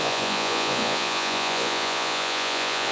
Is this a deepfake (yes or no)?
yes